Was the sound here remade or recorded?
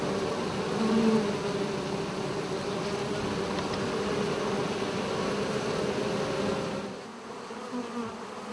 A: recorded